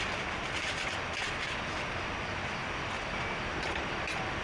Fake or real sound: real